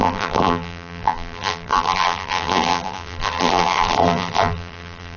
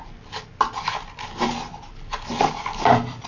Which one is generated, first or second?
first